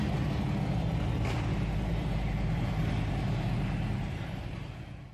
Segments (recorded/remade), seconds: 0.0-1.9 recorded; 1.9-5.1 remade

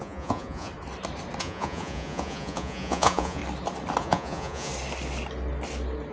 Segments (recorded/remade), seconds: 0.0-0.7 remade; 0.7-1.4 recorded; 1.4-3.4 remade; 3.4-4.0 recorded; 4.0-4.7 remade; 4.7-6.1 recorded

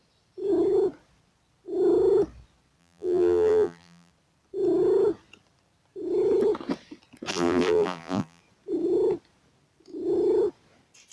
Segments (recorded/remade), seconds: 0.0-2.8 recorded; 2.8-4.1 remade; 4.1-7.3 recorded; 7.3-8.4 remade; 8.4-11.1 recorded

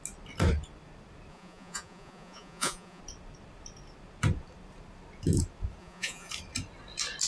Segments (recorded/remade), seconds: 0.0-1.3 recorded; 1.3-3.0 remade; 3.0-5.8 recorded; 5.8-6.3 remade; 6.3-7.3 recorded